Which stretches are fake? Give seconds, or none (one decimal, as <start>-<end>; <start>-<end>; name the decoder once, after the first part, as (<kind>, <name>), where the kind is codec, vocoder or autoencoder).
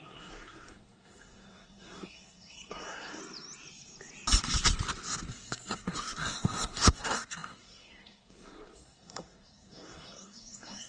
0.0-3.2 (codec, SNAC); 5.3-10.9